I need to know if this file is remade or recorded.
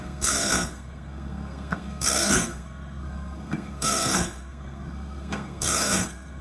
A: remade